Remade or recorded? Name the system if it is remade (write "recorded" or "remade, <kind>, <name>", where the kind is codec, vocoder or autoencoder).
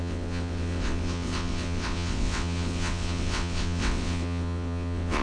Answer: remade, vocoder, WaveNeXt